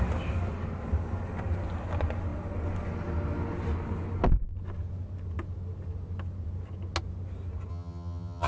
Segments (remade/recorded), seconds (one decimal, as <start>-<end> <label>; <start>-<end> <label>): 0.0-7.7 recorded; 7.7-8.5 remade